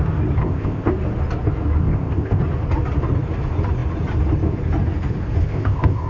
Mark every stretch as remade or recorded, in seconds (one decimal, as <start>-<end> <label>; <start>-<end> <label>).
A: 0.0-0.4 recorded; 0.4-0.9 remade; 0.9-1.8 recorded; 1.8-2.4 remade; 2.4-5.4 recorded; 5.4-6.1 remade